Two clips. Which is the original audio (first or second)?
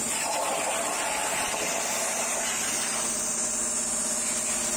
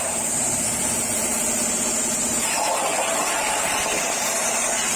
first